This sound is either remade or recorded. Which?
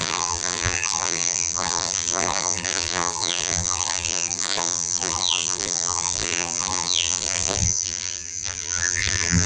remade